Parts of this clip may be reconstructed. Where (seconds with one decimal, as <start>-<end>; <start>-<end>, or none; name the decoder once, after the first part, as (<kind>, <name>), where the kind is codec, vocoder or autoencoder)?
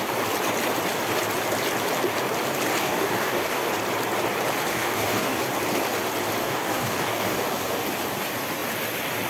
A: 2.8-3.7 (codec, DAC); 4.7-5.4; 6.4-7.7